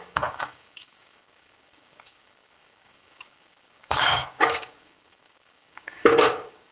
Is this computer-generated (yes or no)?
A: yes